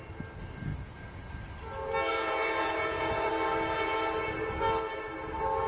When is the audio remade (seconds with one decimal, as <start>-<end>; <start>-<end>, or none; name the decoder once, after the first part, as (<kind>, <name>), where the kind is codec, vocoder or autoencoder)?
0.7-1.3 (vocoder, Vocos); 2.1-3.3